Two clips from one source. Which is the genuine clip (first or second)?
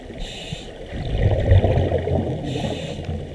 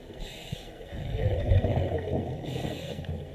first